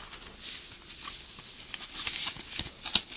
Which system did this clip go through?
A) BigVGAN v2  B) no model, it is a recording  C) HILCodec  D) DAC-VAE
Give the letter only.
B